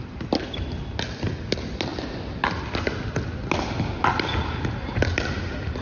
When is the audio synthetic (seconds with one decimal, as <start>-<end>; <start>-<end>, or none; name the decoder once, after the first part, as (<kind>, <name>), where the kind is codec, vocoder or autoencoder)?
none